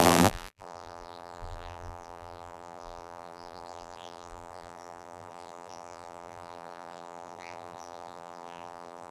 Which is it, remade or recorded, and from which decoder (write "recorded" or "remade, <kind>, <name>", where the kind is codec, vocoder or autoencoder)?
remade, vocoder, BigVGAN v2